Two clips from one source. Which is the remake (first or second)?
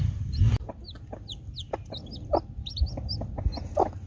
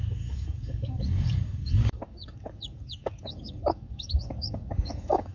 second